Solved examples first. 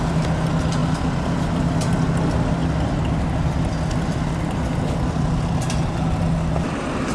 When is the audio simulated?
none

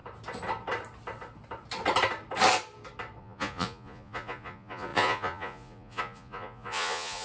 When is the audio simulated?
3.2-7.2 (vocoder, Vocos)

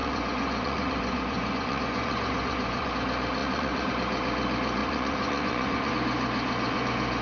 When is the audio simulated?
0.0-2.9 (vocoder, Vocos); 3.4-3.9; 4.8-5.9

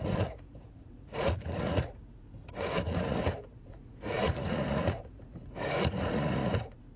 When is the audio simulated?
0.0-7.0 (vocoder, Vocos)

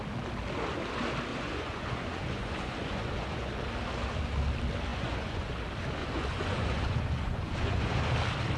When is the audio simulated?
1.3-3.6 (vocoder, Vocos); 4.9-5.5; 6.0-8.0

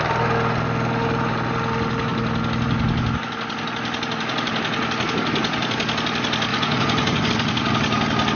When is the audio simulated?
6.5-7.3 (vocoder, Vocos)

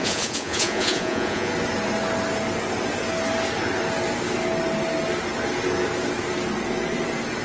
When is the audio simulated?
0.0-1.5 (vocoder, Vocos)

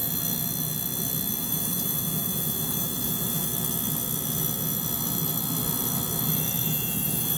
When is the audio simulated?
1.4-3.5 (vocoder, Vocos); 6.6-7.4